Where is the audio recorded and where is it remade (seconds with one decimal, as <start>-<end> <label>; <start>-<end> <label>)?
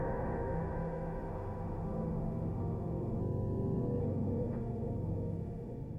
0.0-3.2 remade; 3.2-4.0 recorded; 4.0-6.0 remade